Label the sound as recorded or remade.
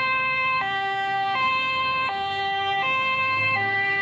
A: remade